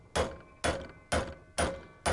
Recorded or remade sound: recorded